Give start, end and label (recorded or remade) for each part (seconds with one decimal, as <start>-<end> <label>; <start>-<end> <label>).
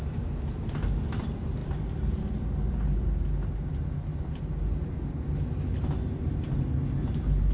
0.0-1.6 recorded; 1.6-3.7 remade; 3.7-7.5 recorded